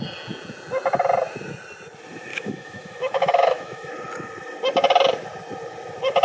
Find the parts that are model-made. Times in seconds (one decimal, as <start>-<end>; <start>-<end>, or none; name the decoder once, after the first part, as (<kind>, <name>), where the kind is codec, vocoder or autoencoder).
2.3-3.9 (autoencoder, DAC-VAE)

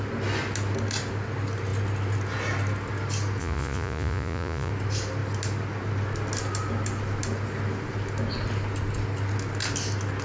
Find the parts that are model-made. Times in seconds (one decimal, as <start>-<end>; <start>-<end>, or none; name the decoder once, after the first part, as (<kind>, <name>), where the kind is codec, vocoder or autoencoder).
3.4-4.7 (vocoder, Vocos)

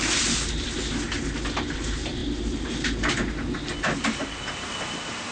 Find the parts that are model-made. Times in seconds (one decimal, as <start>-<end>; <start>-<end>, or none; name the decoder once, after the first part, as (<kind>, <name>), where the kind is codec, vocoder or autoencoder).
none

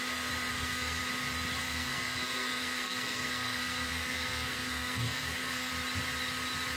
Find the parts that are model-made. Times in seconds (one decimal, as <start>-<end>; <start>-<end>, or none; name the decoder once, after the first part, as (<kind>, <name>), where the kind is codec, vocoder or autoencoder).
0.5-1.0 (codec, SNAC); 1.6-5.7

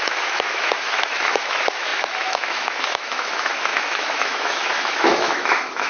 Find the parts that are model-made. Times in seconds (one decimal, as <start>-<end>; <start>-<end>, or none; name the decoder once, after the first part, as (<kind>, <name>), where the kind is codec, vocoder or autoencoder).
0.0-5.9 (autoencoder, DAC-VAE)

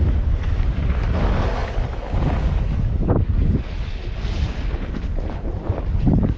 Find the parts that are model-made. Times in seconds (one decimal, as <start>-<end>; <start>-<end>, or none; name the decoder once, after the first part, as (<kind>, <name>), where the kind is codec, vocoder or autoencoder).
0.0-4.0 (codec, DAC); 6.0-6.4

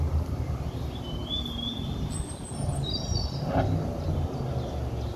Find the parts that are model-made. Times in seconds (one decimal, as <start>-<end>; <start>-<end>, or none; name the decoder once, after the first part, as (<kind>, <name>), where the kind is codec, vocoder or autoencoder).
none

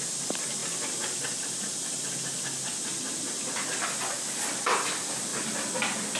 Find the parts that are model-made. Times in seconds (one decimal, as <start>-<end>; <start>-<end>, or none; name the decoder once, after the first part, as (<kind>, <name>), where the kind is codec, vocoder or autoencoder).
none